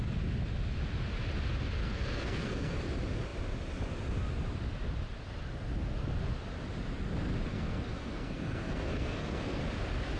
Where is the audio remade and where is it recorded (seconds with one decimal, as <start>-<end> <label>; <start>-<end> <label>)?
0.0-1.8 recorded; 1.8-2.8 remade; 2.8-7.5 recorded; 7.5-9.6 remade; 9.6-10.2 recorded